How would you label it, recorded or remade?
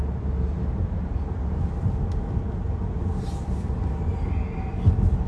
recorded